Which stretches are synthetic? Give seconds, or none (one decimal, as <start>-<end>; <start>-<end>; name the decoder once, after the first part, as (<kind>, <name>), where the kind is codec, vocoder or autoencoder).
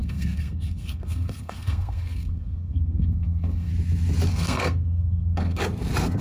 0.0-3.7 (codec, SNAC); 4.3-5.6